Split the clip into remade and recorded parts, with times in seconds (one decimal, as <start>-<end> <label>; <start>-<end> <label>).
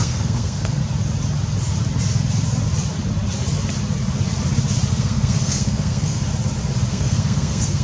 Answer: 0.0-0.8 remade; 0.8-4.9 recorded; 4.9-6.2 remade; 6.2-6.9 recorded; 6.9-7.8 remade